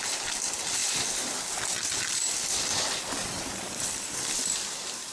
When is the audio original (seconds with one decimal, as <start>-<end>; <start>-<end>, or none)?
none